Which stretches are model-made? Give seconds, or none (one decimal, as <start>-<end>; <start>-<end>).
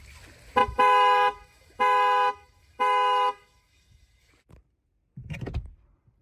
0.6-4.3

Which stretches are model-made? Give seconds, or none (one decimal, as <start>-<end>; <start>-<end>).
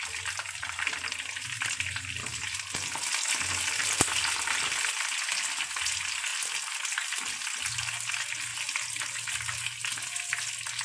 none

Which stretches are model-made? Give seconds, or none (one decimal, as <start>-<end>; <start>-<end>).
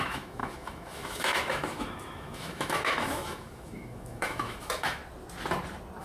0.0-5.0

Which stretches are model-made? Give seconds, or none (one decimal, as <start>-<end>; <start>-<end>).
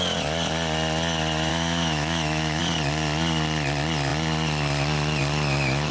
1.5-2.6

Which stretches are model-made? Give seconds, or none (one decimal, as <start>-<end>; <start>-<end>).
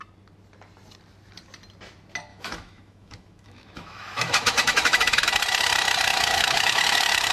2.3-5.3; 6.1-7.3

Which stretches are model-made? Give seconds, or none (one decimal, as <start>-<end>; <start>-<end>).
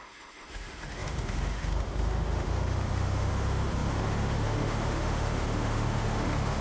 0.0-6.6